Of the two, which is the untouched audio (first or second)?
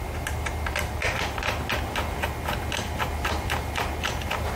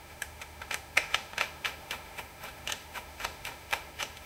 first